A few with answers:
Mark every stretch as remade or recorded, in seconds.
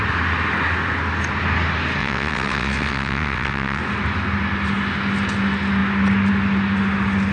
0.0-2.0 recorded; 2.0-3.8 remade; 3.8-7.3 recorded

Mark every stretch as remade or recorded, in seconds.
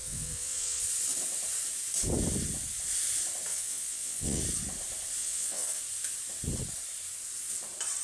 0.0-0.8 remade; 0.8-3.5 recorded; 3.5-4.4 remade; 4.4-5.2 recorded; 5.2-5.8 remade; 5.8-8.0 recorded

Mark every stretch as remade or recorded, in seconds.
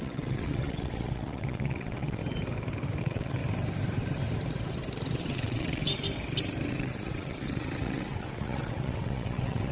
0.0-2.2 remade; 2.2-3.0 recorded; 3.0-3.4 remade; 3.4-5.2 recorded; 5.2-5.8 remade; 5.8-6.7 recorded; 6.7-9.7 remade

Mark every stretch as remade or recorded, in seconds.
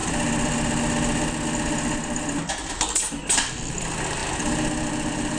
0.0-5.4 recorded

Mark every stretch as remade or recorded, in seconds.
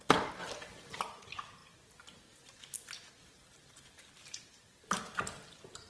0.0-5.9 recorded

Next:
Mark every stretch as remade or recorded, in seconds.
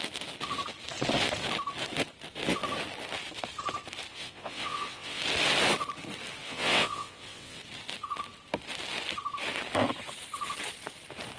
0.0-4.1 recorded; 4.1-5.2 remade; 5.2-6.4 recorded; 6.4-7.6 remade; 7.6-11.4 recorded